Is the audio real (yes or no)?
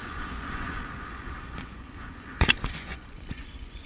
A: no